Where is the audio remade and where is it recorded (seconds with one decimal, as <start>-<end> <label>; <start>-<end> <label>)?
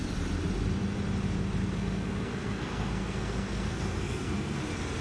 0.0-1.6 recorded; 1.6-4.6 remade; 4.6-5.0 recorded